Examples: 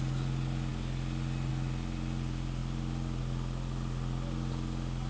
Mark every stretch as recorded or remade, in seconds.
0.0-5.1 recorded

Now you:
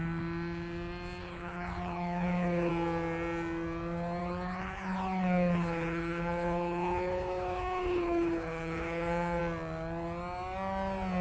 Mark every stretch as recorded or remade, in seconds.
0.0-1.2 recorded; 1.2-2.7 remade; 2.7-4.2 recorded; 4.2-9.4 remade; 9.4-11.2 recorded

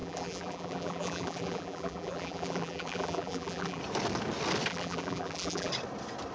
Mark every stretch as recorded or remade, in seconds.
0.0-3.8 remade; 3.8-4.7 recorded; 4.7-5.7 remade; 5.7-6.3 recorded

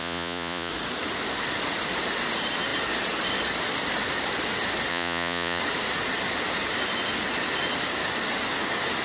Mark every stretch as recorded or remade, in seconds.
0.0-0.7 remade; 0.7-4.9 recorded; 4.9-5.6 remade; 5.6-9.0 recorded

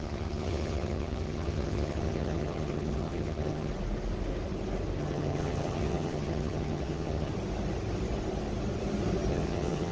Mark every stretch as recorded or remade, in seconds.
0.0-3.7 remade; 3.7-5.0 recorded; 5.0-7.3 remade; 7.3-9.3 recorded; 9.3-9.9 remade

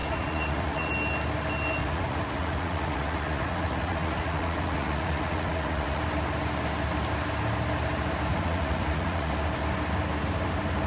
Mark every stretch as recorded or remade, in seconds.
0.0-0.9 remade; 0.9-1.8 recorded; 1.8-6.0 remade; 6.0-8.3 recorded; 8.3-9.3 remade; 9.3-10.9 recorded

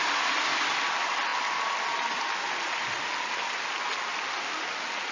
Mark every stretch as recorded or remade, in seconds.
0.0-5.1 recorded

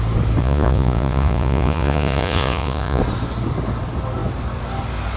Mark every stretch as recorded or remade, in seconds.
0.0-0.4 recorded; 0.4-3.0 remade; 3.0-5.2 recorded